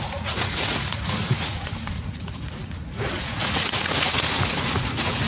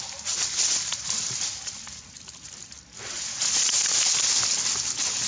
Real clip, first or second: second